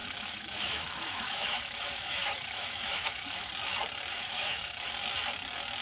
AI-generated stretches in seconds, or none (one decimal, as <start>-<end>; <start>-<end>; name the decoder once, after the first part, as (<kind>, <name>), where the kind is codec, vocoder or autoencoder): 0.0-3.5 (autoencoder, DAC-VAE); 4.1-4.9